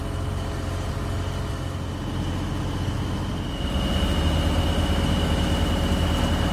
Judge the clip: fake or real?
real